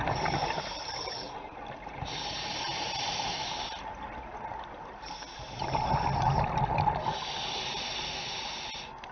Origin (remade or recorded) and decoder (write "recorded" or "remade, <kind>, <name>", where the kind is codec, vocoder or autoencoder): recorded